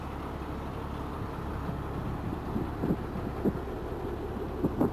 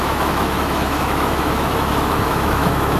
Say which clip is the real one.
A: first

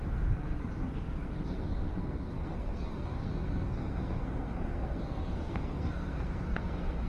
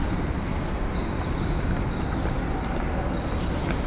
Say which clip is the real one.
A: second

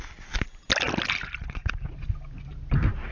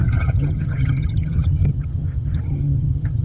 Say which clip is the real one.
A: first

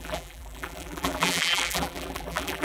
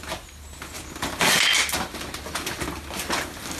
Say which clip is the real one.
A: second